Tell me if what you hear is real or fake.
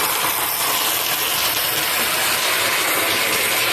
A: real